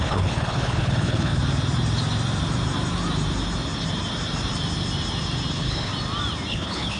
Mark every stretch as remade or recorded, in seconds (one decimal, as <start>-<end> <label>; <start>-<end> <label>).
0.0-1.3 remade; 1.3-5.5 recorded; 5.5-5.9 remade; 5.9-6.5 recorded; 6.5-7.0 remade